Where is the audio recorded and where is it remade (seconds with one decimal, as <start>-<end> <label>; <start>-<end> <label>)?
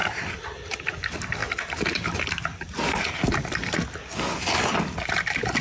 0.0-5.6 recorded